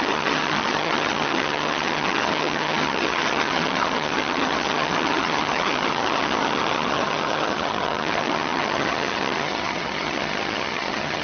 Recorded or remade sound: remade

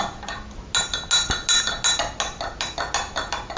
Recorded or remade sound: recorded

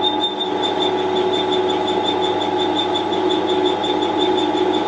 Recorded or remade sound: recorded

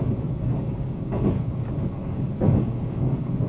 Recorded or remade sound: remade